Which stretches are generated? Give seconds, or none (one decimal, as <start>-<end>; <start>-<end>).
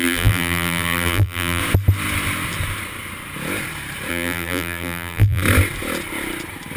0.0-1.6; 4.1-5.4